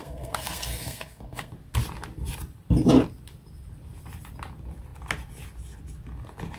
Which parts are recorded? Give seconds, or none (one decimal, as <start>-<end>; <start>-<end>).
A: 1.5-6.6